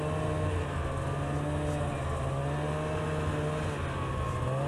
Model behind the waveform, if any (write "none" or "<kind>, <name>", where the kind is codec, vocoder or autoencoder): none